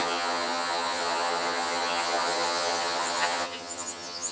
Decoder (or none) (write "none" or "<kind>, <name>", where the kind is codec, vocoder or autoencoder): vocoder, HiFi-GAN